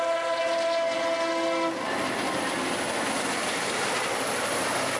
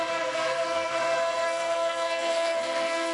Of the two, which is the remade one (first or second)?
second